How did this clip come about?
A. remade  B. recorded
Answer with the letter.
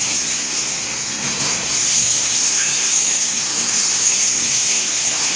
A